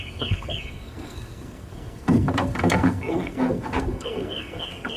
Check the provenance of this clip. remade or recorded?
remade